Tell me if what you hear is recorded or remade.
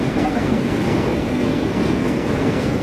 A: remade